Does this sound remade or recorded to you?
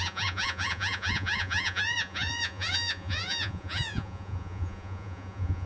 remade